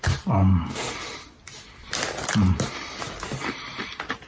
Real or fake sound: real